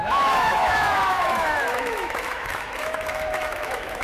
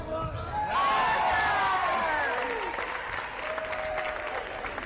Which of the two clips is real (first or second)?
second